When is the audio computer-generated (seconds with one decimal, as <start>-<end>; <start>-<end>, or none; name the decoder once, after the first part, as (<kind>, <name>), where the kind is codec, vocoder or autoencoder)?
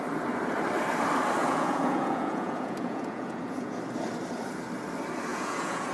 1.4-3.8 (vocoder, Vocos); 5.3-5.9